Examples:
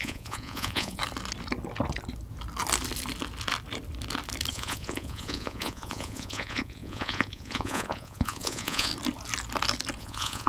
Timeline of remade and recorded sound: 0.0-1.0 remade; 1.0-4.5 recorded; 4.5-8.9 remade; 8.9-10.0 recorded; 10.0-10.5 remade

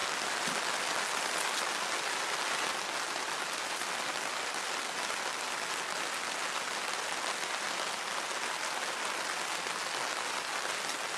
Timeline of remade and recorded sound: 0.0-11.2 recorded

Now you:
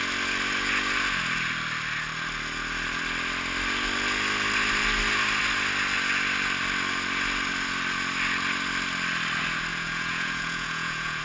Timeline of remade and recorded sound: 0.0-9.7 recorded; 9.7-11.2 remade

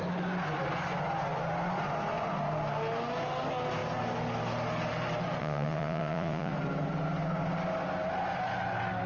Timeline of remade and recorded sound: 0.0-5.4 recorded; 5.4-6.5 remade; 6.5-9.1 recorded

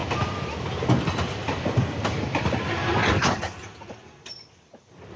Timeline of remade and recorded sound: 0.0-5.2 recorded

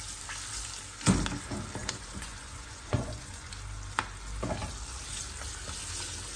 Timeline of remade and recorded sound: 0.0-1.8 recorded; 1.8-3.5 remade; 3.5-6.4 recorded

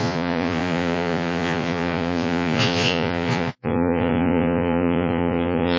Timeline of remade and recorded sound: 0.0-5.8 remade

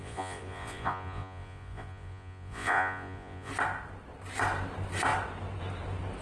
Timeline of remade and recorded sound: 0.0-3.5 remade; 3.5-6.2 recorded